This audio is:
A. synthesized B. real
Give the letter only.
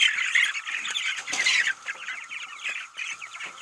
B